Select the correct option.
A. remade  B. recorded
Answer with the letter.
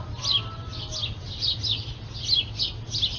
B